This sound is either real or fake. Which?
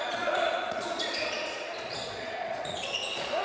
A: fake